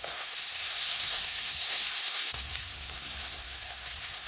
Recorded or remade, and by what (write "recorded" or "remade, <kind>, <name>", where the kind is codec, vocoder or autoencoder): remade, codec, SNAC